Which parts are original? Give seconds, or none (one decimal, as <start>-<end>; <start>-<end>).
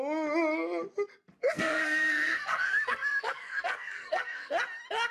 0.0-1.4; 4.5-5.1